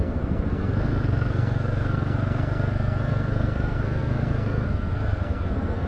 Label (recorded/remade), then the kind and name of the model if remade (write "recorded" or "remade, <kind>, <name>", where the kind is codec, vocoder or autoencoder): remade, codec, SNAC